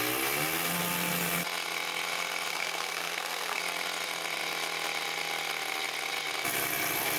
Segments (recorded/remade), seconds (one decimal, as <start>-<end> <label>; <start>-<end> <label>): 0.0-2.5 recorded; 2.5-3.6 remade; 3.6-7.2 recorded